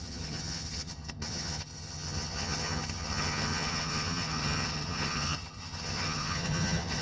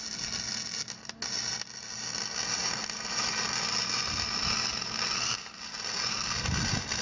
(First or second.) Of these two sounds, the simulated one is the first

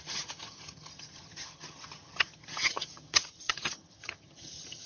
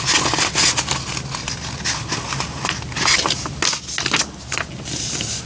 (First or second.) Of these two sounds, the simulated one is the first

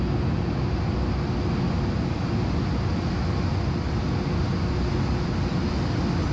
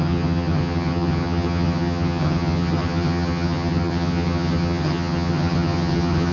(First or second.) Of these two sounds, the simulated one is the second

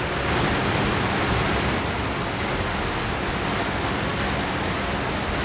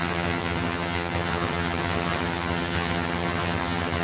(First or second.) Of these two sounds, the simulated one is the second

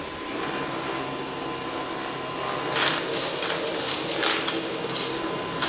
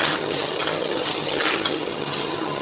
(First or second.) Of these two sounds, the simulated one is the second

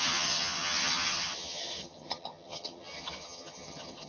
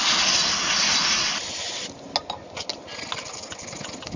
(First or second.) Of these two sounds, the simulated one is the first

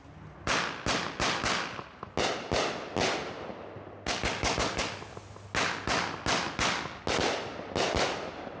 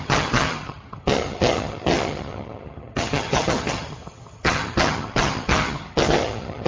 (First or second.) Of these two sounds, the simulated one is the second